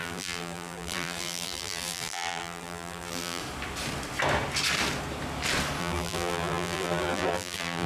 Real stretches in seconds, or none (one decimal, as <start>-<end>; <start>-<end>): 3.4-5.8